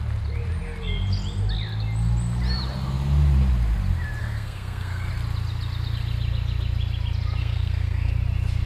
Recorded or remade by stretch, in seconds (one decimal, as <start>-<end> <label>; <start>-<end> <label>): 0.0-4.2 recorded; 4.2-5.1 remade; 5.1-7.4 recorded; 7.4-8.1 remade; 8.1-8.7 recorded